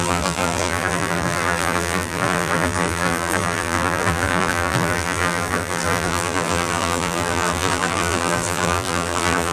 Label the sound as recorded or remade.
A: remade